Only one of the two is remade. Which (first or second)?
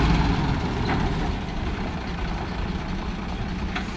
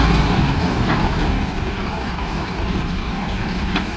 second